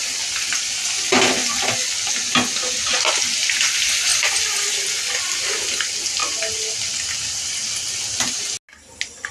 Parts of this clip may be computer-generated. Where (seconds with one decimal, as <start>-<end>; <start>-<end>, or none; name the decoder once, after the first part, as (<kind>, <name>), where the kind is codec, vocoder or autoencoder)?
1.4-2.1 (vocoder, BigVGAN v2); 4.1-5.1